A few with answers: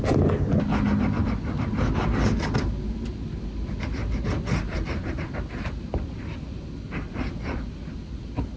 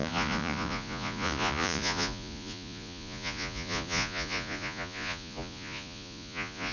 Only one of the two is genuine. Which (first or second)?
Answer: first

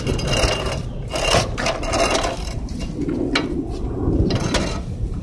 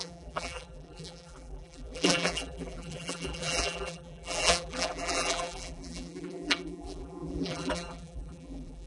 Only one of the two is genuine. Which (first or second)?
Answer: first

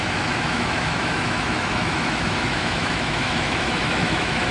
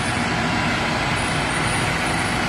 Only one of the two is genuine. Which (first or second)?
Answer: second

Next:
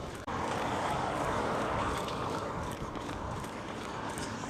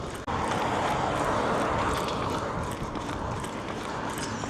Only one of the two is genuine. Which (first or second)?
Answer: second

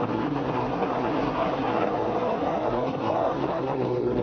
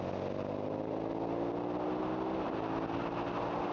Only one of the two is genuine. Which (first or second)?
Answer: second